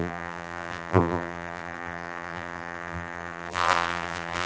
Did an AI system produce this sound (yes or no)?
yes